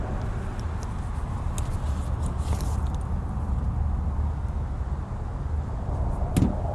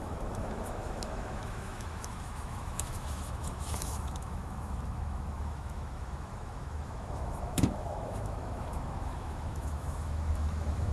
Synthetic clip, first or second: second